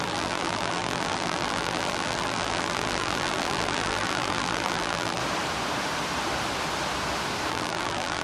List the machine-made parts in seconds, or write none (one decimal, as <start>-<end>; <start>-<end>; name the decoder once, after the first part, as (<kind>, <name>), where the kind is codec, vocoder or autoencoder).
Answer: 0.0-5.2 (vocoder, BigVGAN v2); 7.5-8.2